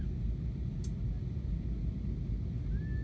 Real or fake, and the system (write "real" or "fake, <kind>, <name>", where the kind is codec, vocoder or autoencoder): real